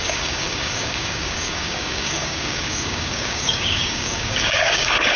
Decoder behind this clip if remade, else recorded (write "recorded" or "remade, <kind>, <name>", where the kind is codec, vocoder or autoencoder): remade, codec, DAC